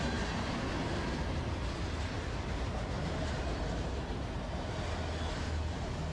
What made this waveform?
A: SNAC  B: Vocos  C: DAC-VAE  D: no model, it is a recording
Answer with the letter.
D